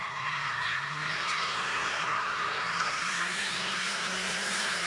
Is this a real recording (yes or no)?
no